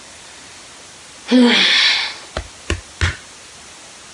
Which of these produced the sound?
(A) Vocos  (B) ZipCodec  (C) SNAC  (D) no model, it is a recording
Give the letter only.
D